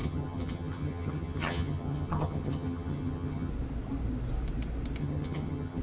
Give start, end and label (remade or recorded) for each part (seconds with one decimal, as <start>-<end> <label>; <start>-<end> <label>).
0.0-3.5 remade; 3.5-5.0 recorded; 5.0-5.8 remade